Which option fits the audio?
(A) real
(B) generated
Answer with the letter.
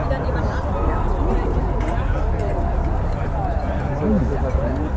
A